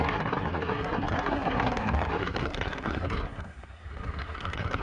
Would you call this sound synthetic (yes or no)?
yes